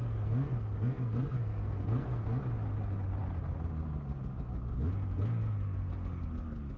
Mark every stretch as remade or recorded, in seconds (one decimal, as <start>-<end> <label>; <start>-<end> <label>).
0.0-2.4 remade; 2.4-6.8 recorded